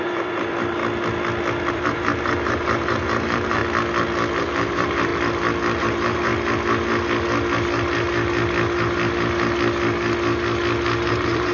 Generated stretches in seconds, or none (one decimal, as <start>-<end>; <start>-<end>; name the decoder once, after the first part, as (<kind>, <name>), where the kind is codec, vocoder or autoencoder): 0.0-0.8 (vocoder, BigVGAN v2); 1.7-3.6; 4.4-5.1; 5.8-6.3; 11.1-11.5